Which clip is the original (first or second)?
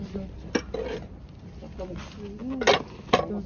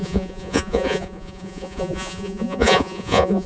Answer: first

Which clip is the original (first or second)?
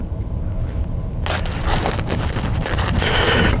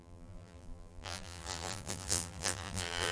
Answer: first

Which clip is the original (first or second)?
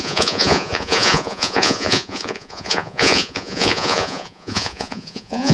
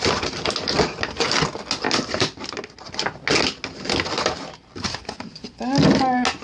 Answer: second